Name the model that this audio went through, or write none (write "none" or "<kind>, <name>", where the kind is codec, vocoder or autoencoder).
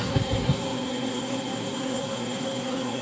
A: codec, SNAC